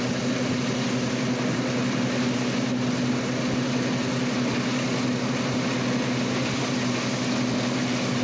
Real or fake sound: real